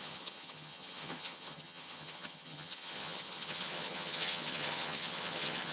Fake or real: fake